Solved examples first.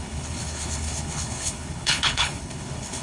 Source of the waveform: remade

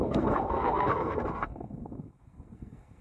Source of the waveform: remade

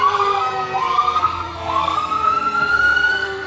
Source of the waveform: remade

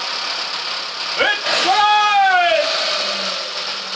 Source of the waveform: recorded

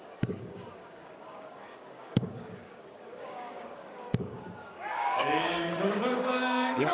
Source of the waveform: remade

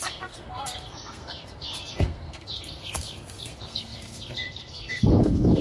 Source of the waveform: remade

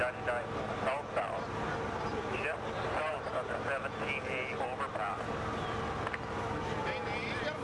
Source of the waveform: recorded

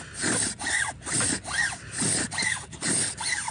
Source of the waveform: recorded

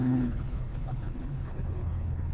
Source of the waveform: remade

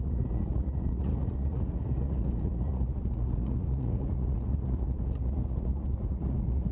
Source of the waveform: remade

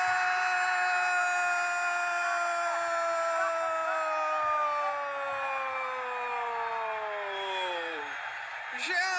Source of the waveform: recorded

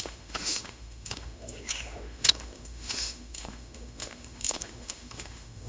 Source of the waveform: remade